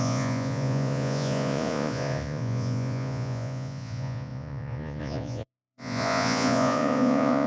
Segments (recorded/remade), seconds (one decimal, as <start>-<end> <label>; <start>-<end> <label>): 0.0-7.5 remade